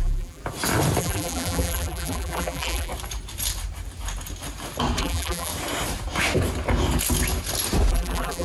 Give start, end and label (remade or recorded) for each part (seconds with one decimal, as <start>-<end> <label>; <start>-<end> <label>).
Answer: 0.0-0.4 remade; 0.4-1.0 recorded; 1.0-2.9 remade; 2.9-5.0 recorded; 5.0-5.5 remade; 5.5-7.9 recorded; 7.9-8.4 remade